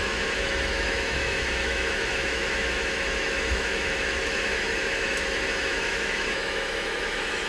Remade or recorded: remade